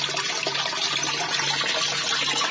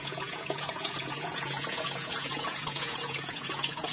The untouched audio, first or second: first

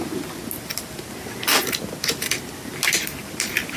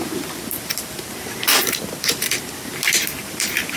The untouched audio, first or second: first